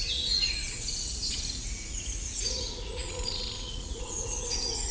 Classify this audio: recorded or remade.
remade